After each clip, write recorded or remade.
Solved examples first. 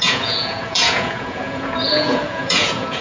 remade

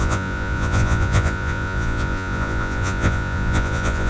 remade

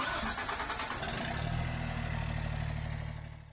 recorded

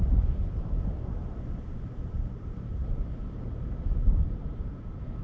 remade